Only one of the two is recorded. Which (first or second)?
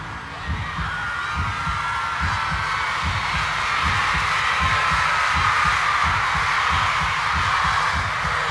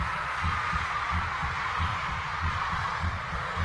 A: first